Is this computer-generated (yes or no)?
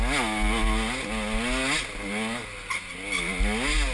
no